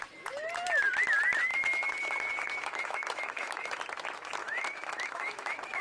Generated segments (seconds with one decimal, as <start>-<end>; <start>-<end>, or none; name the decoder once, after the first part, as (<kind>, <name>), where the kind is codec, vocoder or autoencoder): 1.5-3.8 (autoencoder, DAC-VAE); 4.4-5.8